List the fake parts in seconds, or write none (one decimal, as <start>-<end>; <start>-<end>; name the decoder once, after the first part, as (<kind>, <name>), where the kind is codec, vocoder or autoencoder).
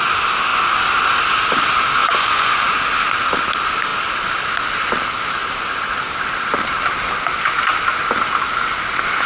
2.0-2.8 (vocoder, Vocos)